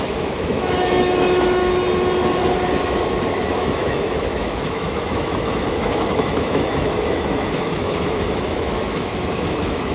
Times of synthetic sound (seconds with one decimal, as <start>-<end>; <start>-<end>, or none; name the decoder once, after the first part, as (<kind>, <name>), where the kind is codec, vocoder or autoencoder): 0.0-1.6 (autoencoder, DAC-VAE); 3.5-9.9